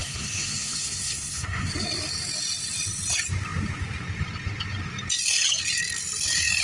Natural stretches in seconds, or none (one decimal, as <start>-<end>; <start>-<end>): 1.7-6.6